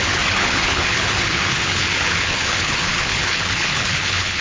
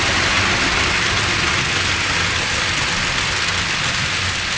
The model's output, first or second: first